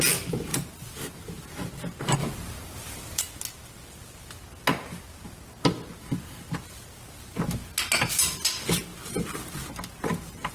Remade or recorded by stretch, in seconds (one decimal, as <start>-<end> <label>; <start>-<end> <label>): 0.0-0.5 recorded; 0.5-1.5 remade; 1.5-2.2 recorded; 2.2-3.2 remade; 3.2-10.5 recorded